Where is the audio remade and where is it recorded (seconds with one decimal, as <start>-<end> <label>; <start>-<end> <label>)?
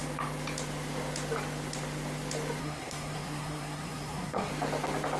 0.0-2.6 recorded; 2.6-4.5 remade; 4.5-5.2 recorded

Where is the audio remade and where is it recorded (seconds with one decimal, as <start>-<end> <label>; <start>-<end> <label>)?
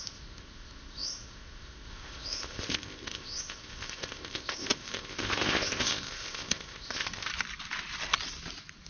0.0-7.3 remade; 7.3-8.9 recorded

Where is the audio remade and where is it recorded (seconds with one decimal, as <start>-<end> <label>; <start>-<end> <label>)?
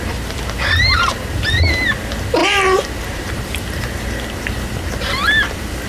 0.0-2.4 recorded; 2.4-3.3 remade; 3.3-5.9 recorded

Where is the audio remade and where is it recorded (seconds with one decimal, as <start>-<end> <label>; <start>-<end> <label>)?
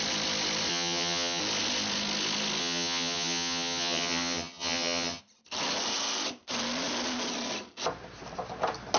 0.0-0.7 recorded; 0.7-1.4 remade; 1.4-2.6 recorded; 2.6-5.2 remade; 5.2-9.0 recorded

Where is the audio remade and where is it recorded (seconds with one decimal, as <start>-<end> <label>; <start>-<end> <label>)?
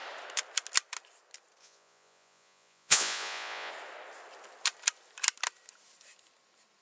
0.0-1.6 recorded; 1.6-3.7 remade; 3.7-6.8 recorded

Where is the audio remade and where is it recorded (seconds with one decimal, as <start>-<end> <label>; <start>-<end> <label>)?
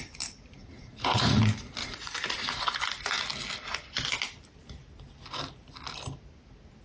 0.0-0.5 recorded; 0.5-1.4 remade; 1.4-1.8 recorded; 1.8-2.8 remade; 2.8-6.8 recorded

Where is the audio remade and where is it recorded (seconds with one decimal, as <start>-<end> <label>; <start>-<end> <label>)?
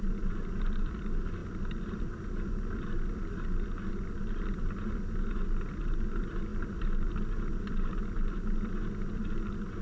0.0-9.8 recorded